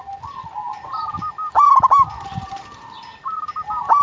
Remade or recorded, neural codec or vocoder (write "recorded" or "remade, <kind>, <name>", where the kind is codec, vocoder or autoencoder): recorded